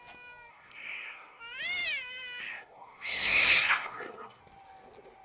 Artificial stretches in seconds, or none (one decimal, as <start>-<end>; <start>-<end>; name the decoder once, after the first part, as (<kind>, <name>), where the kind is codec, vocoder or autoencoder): 0.5-1.4 (codec, SNAC); 2.4-4.4